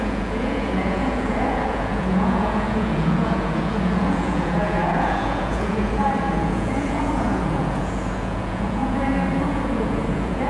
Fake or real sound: fake